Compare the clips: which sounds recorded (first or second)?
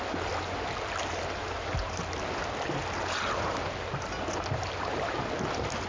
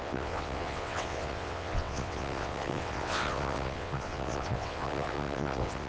first